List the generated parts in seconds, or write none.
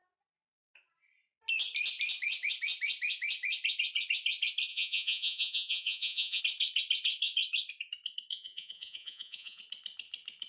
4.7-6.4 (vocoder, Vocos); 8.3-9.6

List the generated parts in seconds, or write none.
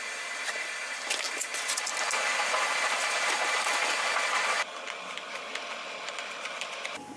none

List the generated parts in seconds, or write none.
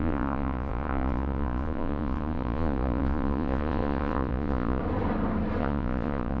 0.0-4.8 (vocoder, Vocos); 5.6-6.4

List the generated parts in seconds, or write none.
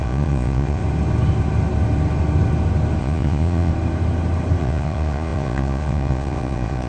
0.0-0.8 (vocoder, Vocos); 3.0-3.7; 4.6-6.9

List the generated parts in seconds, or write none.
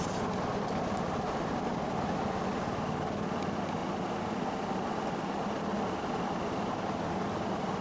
none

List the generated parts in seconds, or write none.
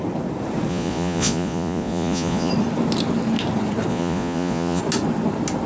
0.7-2.5 (vocoder, Vocos); 3.9-4.8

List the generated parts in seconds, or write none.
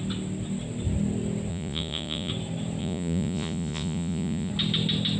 1.5-2.3 (vocoder, Vocos); 2.8-4.5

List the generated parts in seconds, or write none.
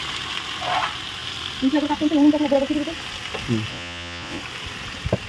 3.7-4.4 (vocoder, Vocos)